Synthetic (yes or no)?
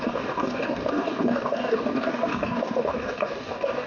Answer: yes